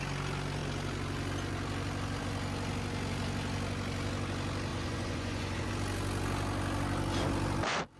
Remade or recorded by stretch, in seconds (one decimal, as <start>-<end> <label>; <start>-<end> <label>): 0.0-4.7 recorded; 4.7-5.7 remade; 5.7-8.0 recorded